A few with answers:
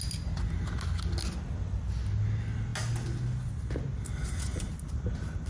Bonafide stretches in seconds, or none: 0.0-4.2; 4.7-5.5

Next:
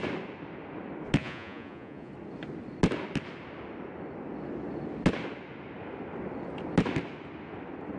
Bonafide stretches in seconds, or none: 0.0-1.2; 2.1-8.0

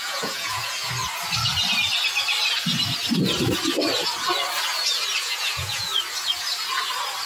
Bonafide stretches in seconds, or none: 0.8-5.2; 5.9-7.3

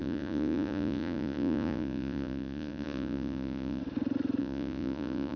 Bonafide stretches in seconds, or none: 3.8-4.4

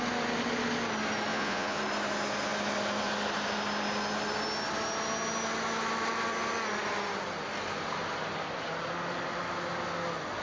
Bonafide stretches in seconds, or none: 0.0-1.3; 1.8-10.4

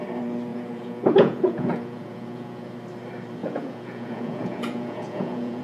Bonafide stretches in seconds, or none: 0.0-0.5; 2.7-3.4

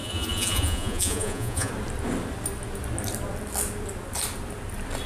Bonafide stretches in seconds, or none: 1.7-5.1